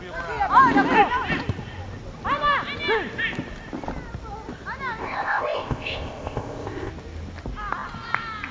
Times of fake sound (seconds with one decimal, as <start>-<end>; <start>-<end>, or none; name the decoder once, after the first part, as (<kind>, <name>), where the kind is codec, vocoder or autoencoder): 5.0-6.9 (codec, ZipCodec)

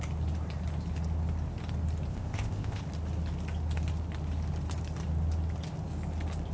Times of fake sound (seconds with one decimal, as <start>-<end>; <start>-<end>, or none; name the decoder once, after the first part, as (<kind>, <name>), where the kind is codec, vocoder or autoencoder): 2.1-2.8 (codec, ZipCodec)

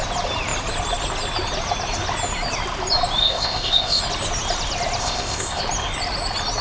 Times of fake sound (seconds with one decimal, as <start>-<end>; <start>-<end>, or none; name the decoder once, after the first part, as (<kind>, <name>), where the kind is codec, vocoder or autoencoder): 3.2-4.0 (codec, ZipCodec); 5.0-5.6